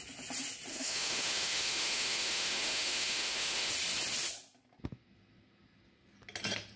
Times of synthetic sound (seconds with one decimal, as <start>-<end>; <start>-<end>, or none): 0.7-3.7